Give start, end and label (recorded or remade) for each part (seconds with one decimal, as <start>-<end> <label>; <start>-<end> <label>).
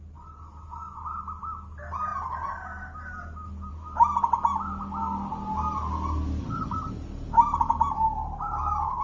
0.0-6.4 recorded; 6.4-6.9 remade; 6.9-9.0 recorded